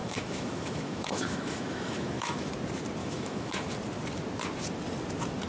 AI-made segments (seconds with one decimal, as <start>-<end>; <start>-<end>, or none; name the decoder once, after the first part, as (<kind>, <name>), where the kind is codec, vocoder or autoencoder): 0.0-2.5 (autoencoder, DAC-VAE); 3.0-3.7